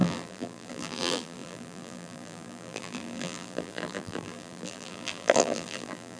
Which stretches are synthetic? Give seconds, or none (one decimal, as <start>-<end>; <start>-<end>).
0.0-6.2

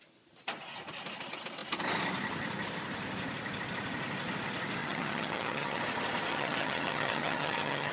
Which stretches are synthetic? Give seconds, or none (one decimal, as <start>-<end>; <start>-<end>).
4.8-5.8; 6.3-7.9

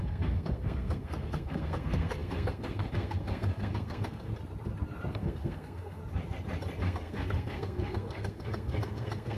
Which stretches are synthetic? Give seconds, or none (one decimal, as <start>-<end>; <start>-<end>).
0.0-4.3; 5.1-6.0; 6.8-9.4

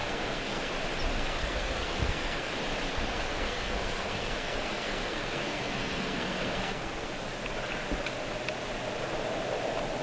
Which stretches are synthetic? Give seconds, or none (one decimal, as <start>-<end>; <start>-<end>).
0.0-0.7; 1.1-2.5; 2.9-7.1

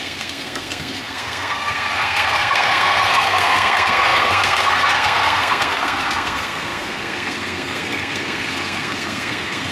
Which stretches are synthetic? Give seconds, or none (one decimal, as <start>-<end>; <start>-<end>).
0.0-9.7

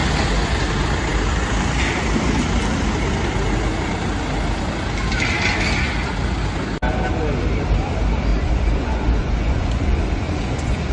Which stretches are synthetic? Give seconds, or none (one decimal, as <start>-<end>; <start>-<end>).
8.3-10.9